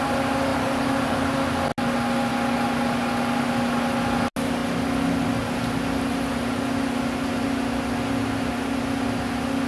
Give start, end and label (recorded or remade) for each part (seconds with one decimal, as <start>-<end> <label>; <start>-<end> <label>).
0.0-0.5 recorded; 0.5-1.2 remade; 1.2-9.7 recorded